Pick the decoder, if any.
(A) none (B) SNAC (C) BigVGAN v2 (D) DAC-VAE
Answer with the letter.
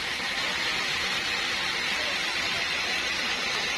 A